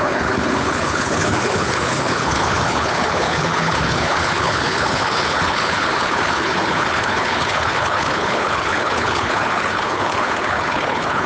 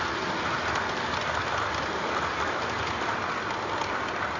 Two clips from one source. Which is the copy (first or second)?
first